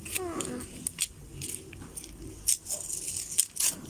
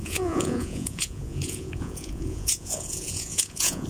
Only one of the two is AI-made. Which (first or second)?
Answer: second